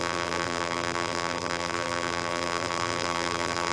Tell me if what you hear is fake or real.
fake